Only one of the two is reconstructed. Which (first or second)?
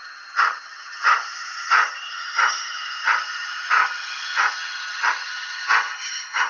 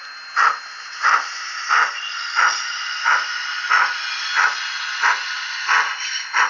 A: first